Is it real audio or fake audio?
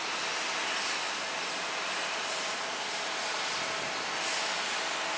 real